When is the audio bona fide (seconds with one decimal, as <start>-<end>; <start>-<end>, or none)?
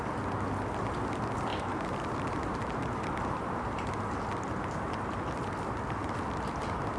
0.0-1.5; 3.9-7.0